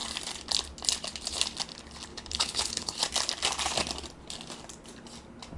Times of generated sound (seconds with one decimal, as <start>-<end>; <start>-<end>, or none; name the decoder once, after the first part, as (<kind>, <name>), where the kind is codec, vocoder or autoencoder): 2.1-3.0 (codec, HILCodec)